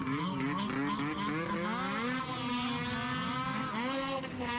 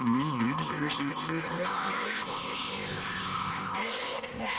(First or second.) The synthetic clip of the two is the second